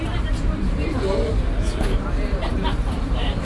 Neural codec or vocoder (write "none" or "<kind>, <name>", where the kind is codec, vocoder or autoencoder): vocoder, BigVGAN v2